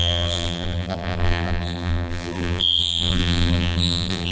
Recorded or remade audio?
remade